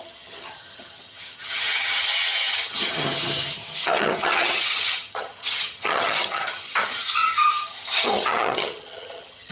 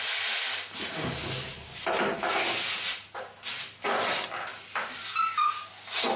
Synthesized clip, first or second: first